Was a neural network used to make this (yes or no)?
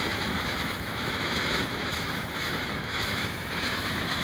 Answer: yes